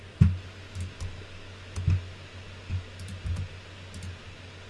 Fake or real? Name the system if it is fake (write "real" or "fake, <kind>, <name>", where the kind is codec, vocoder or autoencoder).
real